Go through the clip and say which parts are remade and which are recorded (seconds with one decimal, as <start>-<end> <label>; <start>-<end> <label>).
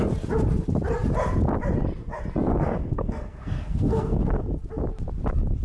0.0-2.5 recorded; 2.5-4.2 remade; 4.2-5.6 recorded